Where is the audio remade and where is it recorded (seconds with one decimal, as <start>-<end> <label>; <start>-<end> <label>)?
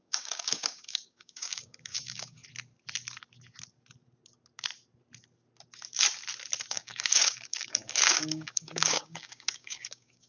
0.0-2.4 remade; 2.4-6.7 recorded; 6.7-10.3 remade